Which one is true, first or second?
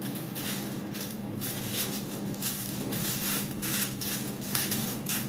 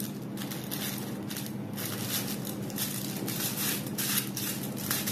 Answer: second